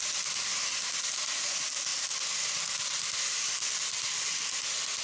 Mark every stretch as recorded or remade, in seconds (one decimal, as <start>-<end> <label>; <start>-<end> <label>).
0.0-1.9 recorded; 1.9-3.7 remade; 3.7-5.0 recorded